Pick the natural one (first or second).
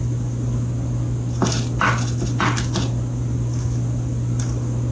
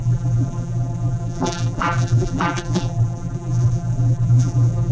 first